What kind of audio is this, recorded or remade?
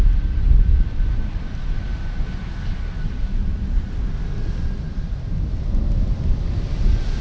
recorded